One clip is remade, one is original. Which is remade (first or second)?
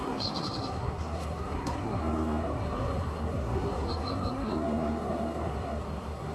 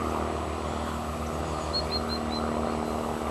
first